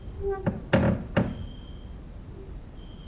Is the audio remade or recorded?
recorded